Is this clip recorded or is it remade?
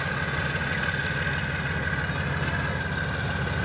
recorded